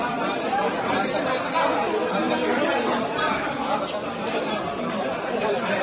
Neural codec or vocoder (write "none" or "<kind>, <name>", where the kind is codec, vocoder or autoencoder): none